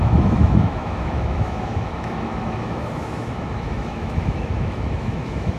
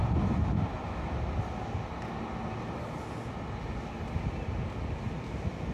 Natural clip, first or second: second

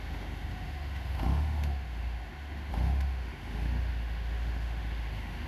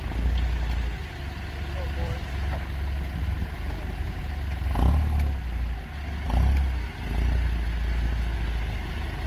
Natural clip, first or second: second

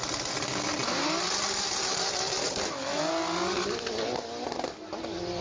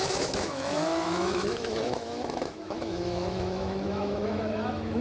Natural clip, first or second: first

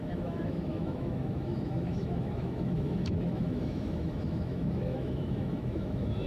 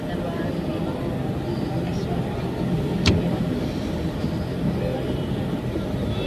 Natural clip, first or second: second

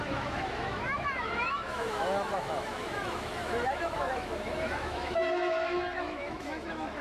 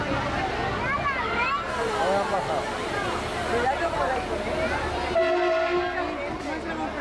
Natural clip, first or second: second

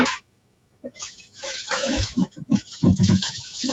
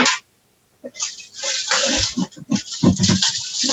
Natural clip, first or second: second